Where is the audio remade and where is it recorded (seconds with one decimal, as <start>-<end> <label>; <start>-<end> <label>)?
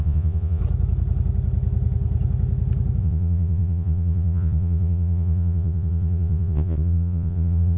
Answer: 0.0-0.6 remade; 0.6-3.0 recorded; 3.0-7.8 remade